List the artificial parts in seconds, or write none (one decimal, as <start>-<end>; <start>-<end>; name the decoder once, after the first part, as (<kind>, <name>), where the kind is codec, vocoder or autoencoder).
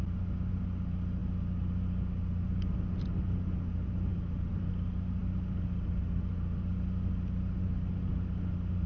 none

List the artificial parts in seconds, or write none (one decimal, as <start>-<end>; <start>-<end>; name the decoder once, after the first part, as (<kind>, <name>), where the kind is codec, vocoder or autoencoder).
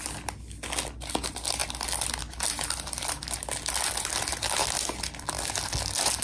none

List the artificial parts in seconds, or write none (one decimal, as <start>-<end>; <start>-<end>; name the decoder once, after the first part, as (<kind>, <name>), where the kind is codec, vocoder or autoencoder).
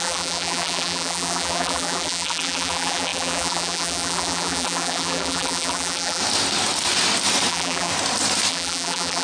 0.0-6.2 (vocoder, BigVGAN v2); 7.5-7.9; 8.5-9.2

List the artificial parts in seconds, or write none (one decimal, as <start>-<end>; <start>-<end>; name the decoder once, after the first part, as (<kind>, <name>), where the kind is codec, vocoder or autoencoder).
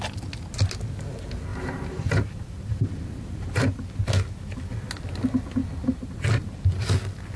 1.5-3.8 (vocoder, BigVGAN v2); 5.6-6.1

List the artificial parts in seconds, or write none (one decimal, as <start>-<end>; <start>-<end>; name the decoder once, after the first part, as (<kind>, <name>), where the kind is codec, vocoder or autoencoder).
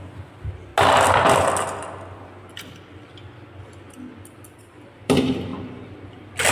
0.0-0.7 (vocoder, BigVGAN v2); 4.6-5.5